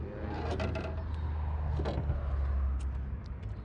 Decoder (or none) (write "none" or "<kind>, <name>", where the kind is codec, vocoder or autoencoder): none